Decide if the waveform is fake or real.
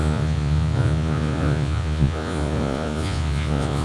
fake